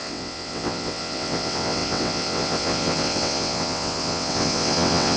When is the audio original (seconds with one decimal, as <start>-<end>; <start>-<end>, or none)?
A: none